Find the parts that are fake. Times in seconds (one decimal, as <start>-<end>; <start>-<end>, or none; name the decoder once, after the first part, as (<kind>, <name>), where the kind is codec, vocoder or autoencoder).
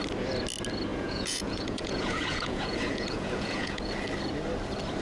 0.9-3.9 (vocoder, Vocos)